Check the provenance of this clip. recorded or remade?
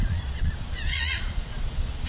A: remade